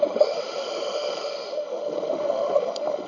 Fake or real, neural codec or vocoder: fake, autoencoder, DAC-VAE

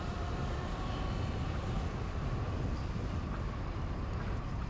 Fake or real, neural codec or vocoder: real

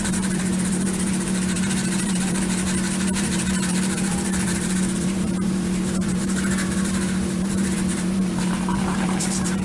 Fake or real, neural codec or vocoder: fake, vocoder, BigVGAN v2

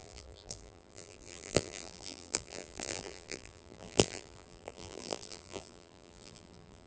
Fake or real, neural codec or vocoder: fake, vocoder, BigVGAN v2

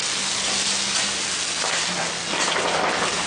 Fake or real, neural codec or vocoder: real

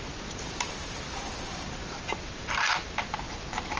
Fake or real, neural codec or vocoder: fake, vocoder, BigVGAN v2